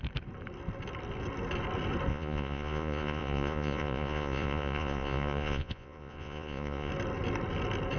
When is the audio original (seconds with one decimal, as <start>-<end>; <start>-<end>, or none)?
0.0-2.1; 6.9-8.0